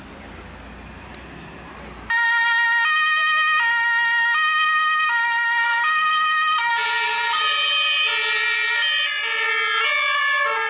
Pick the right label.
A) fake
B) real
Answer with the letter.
B